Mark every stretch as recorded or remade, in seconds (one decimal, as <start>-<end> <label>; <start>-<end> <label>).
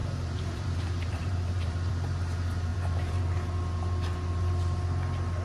0.0-1.9 remade; 1.9-2.7 recorded; 2.7-3.2 remade; 3.2-5.4 recorded